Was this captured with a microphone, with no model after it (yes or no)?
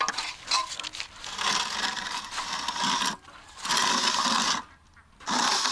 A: yes